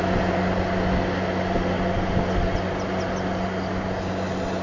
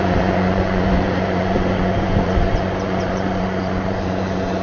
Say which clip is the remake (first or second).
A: second